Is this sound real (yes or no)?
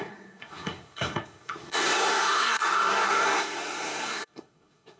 no